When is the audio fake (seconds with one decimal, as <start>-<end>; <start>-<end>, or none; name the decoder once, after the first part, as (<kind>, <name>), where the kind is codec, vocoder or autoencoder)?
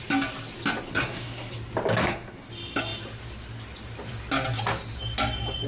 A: 0.9-1.5 (codec, SNAC); 2.0-2.5